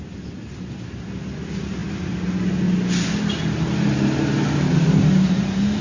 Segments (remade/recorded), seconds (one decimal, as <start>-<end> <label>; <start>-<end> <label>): 0.0-5.8 recorded